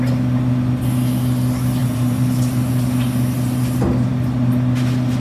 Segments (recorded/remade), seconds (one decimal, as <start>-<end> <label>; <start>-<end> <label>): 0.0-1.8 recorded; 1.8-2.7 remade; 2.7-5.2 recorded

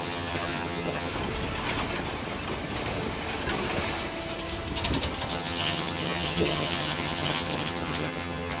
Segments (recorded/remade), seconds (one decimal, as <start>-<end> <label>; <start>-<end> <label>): 0.0-1.1 remade; 1.1-5.3 recorded; 5.3-8.6 remade

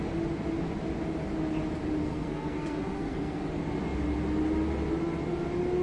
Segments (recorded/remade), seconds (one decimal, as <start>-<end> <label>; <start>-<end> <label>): 0.0-2.0 recorded; 2.0-3.5 remade; 3.5-5.8 recorded